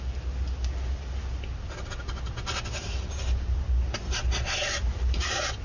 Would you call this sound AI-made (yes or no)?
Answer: no